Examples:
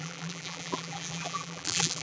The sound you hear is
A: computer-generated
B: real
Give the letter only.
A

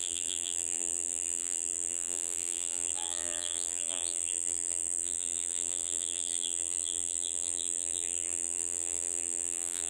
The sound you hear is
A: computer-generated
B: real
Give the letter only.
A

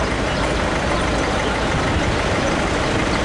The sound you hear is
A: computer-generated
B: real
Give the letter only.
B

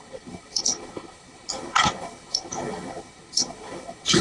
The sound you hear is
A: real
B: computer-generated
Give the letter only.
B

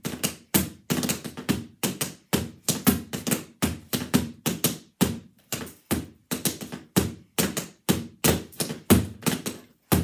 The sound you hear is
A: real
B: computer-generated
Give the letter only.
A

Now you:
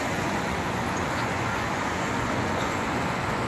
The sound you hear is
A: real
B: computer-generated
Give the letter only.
B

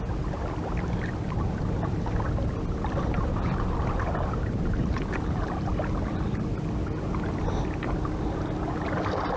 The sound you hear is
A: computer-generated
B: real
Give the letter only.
B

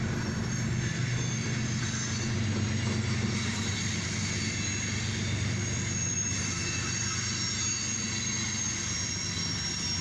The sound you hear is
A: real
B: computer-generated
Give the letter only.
A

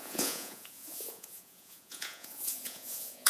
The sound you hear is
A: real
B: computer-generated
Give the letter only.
B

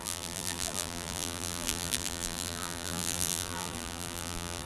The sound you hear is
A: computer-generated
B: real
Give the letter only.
A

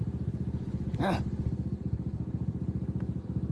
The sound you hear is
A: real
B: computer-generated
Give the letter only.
A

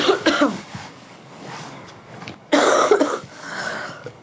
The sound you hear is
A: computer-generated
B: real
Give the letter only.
A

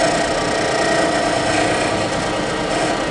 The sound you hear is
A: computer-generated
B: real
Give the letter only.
B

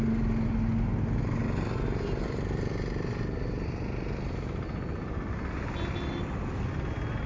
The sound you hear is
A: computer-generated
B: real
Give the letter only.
B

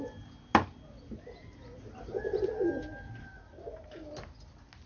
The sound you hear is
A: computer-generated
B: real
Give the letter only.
B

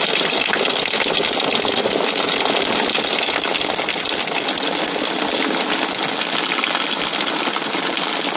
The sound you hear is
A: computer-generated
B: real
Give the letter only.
B